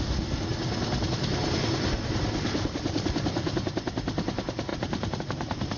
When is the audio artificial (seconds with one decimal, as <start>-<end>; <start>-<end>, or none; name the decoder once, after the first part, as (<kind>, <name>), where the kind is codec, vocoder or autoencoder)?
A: none